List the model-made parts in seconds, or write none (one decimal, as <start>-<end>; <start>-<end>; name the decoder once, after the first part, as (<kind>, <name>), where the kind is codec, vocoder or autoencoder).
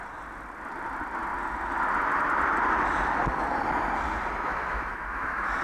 4.5-5.6 (autoencoder, DAC-VAE)